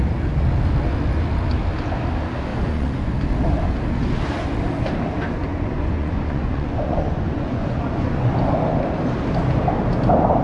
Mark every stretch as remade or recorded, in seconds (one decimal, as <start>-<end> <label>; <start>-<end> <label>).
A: 0.0-2.5 recorded; 2.5-3.1 remade; 3.1-5.5 recorded; 5.5-8.3 remade; 8.3-10.4 recorded